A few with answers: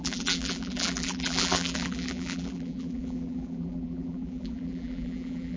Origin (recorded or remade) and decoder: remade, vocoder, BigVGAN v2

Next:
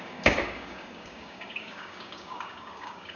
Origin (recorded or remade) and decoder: remade, codec, DAC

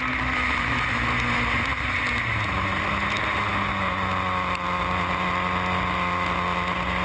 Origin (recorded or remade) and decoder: recorded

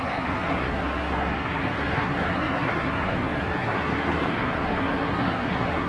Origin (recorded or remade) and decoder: remade, codec, SNAC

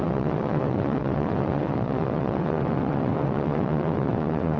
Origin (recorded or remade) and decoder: remade, vocoder, WaveNeXt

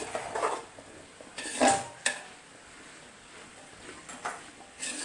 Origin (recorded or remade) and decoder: recorded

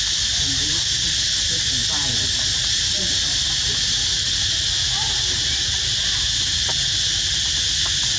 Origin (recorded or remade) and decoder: recorded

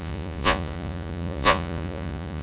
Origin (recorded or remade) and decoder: remade, vocoder, Vocos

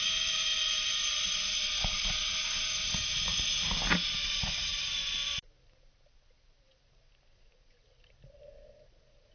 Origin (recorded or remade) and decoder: recorded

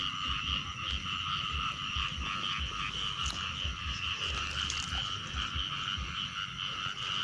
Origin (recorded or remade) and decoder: recorded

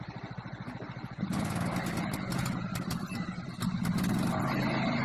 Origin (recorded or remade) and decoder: recorded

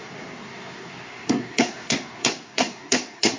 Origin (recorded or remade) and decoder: remade, codec, SNAC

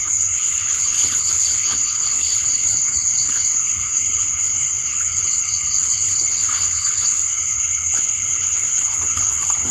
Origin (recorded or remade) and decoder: remade, codec, HILCodec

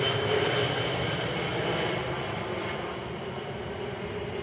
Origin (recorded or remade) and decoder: recorded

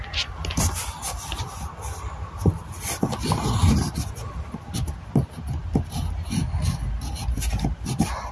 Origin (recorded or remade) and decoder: recorded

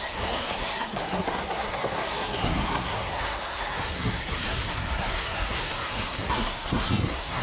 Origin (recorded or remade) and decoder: remade, codec, SNAC